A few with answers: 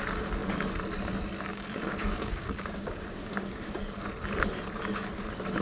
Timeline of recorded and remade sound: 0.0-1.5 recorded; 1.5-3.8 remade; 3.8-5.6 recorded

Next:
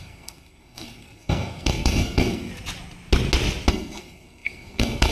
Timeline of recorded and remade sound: 0.0-2.5 remade; 2.5-3.7 recorded; 3.7-5.1 remade